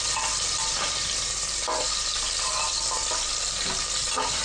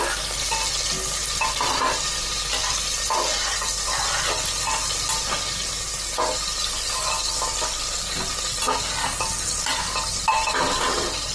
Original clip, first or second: second